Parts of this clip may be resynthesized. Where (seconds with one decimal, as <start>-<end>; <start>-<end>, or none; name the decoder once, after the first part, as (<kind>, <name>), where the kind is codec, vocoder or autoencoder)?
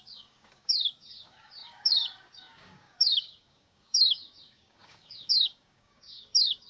0.0-6.7 (codec, DAC)